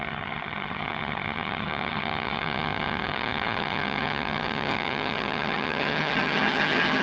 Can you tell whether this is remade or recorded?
remade